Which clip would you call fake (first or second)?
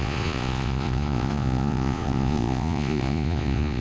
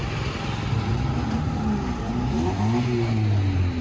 first